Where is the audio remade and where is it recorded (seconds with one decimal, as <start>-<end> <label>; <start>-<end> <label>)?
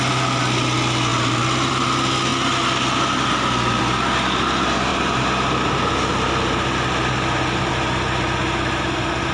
0.0-9.3 recorded